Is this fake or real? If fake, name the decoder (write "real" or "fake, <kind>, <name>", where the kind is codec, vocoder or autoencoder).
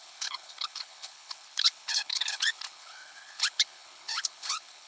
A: fake, codec, HILCodec